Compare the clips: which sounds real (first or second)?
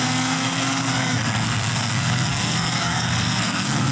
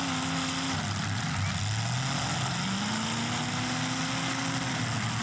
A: second